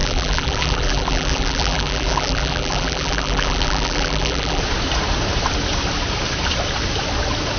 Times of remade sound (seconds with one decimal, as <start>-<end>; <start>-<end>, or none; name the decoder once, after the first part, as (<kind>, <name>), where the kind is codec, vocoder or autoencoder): 0.0-4.6 (vocoder, BigVGAN v2)